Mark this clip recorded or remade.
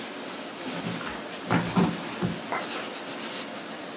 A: recorded